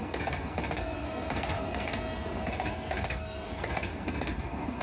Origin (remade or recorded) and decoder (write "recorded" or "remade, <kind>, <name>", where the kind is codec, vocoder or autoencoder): remade, codec, SNAC